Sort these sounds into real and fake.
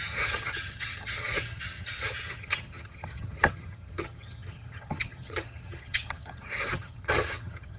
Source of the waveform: fake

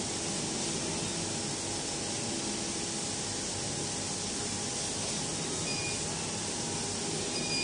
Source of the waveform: real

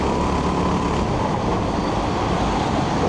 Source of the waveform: real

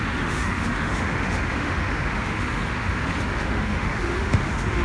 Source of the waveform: fake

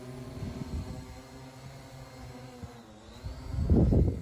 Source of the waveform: real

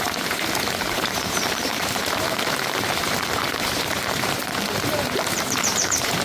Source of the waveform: fake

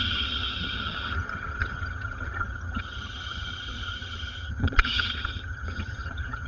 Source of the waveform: fake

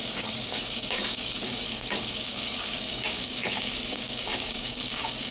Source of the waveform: fake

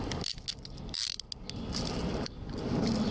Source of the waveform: real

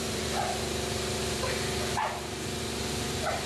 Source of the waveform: fake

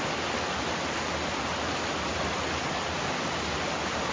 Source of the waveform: real